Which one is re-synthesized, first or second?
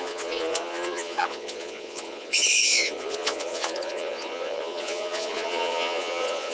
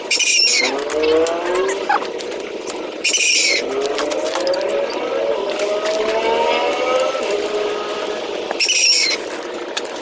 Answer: first